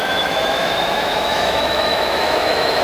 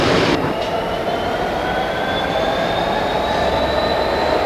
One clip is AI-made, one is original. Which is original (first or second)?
second